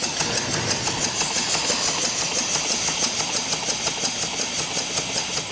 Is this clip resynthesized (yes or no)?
no